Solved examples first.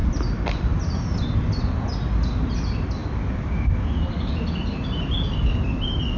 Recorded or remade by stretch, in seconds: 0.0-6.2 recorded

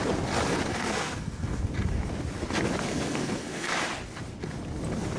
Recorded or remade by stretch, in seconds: 0.0-0.7 recorded; 0.7-1.6 remade; 1.6-2.9 recorded; 2.9-3.7 remade; 3.7-5.2 recorded

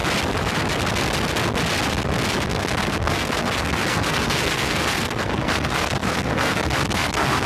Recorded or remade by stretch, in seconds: 0.0-2.5 recorded; 2.5-7.5 remade